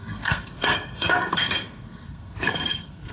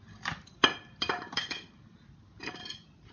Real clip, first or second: second